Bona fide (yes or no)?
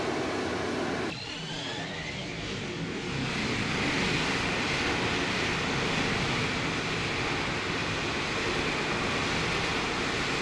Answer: yes